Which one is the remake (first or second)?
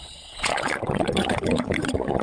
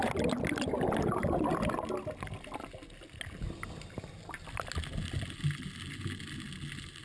first